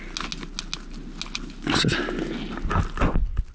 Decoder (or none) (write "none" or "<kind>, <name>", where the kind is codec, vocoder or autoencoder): none